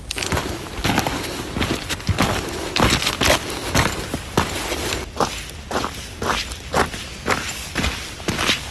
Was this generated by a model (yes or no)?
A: no